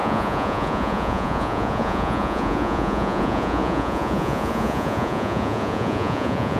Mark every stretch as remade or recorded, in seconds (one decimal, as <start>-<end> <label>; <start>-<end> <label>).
0.0-6.6 remade